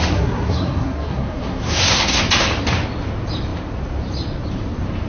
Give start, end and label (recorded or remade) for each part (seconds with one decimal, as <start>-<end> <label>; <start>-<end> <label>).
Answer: 0.0-2.2 remade; 2.2-5.1 recorded